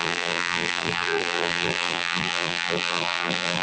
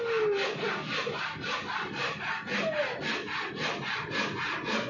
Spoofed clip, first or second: first